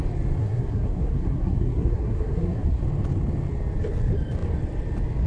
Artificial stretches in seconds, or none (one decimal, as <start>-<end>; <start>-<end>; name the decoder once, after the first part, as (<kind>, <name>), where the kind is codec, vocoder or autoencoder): 0.4-2.8 (codec, SNAC)